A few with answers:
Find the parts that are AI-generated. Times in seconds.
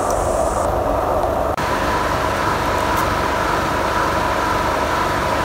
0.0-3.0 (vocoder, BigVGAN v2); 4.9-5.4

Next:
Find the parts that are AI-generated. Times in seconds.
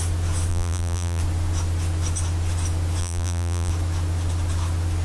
0.5-1.2 (vocoder, BigVGAN v2); 3.0-3.7